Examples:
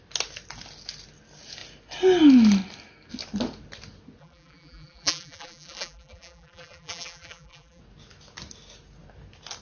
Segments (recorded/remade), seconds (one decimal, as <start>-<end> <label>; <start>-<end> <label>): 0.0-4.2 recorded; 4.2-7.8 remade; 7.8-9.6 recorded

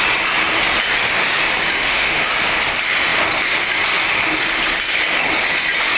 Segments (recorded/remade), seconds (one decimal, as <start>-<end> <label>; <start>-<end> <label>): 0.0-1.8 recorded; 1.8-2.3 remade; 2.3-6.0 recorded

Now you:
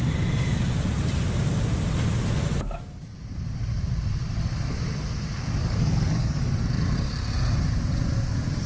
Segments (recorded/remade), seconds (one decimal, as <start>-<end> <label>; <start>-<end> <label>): 0.0-5.6 recorded; 5.6-6.5 remade; 6.5-8.7 recorded

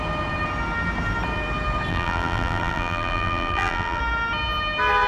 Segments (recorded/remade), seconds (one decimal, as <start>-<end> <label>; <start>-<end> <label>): 0.0-1.9 recorded; 1.9-4.0 remade; 4.0-5.1 recorded

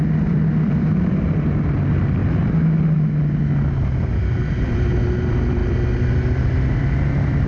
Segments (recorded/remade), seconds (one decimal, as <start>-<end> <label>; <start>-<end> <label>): 0.0-7.5 recorded

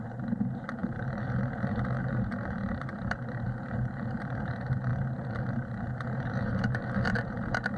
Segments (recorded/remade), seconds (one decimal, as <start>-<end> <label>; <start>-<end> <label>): 0.0-4.9 remade; 4.9-5.5 recorded; 5.5-7.8 remade

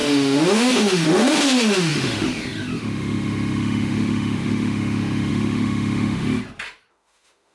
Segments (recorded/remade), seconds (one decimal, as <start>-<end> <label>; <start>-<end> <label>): 0.0-6.4 remade; 6.4-6.9 recorded; 6.9-7.5 remade

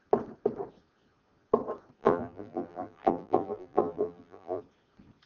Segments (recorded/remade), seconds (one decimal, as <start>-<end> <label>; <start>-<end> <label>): 0.0-2.0 recorded; 2.0-4.6 remade; 4.6-5.3 recorded